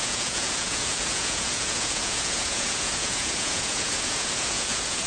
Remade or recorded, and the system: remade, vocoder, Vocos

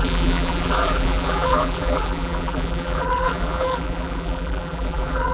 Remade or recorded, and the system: remade, vocoder, BigVGAN v2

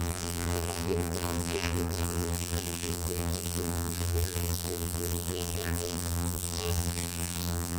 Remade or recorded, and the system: remade, vocoder, BigVGAN v2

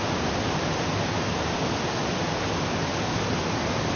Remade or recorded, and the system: recorded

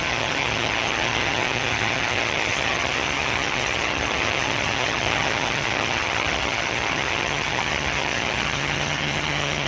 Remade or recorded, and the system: remade, vocoder, HiFi-GAN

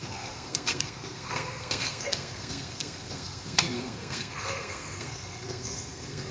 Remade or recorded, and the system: remade, codec, SNAC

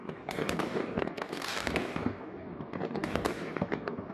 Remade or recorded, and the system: remade, codec, DAC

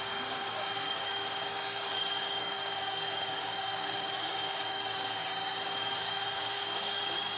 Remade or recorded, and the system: remade, codec, DAC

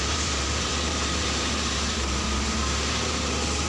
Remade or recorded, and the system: remade, vocoder, BigVGAN v2